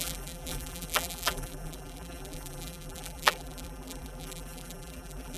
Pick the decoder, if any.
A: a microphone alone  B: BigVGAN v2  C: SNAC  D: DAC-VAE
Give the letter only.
B